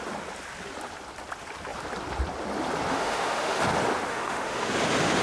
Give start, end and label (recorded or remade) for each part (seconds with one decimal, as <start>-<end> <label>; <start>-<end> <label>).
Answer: 0.0-2.9 recorded; 2.9-3.6 remade; 3.6-4.1 recorded; 4.1-4.7 remade; 4.7-5.2 recorded

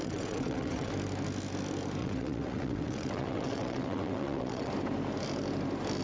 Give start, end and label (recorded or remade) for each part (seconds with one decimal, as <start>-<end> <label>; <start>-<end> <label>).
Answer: 0.0-0.9 remade; 0.9-2.0 recorded; 2.0-4.7 remade; 4.7-6.0 recorded

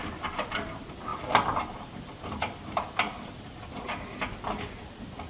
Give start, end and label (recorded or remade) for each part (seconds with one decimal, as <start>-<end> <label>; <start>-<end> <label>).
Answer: 0.0-1.1 recorded; 1.1-3.3 remade; 3.3-5.3 recorded